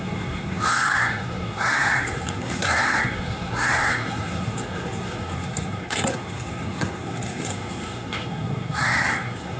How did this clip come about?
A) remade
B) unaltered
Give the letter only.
A